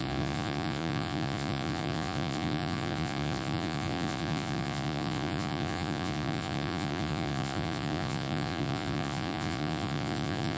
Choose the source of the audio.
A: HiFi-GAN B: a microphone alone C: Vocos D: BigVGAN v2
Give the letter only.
C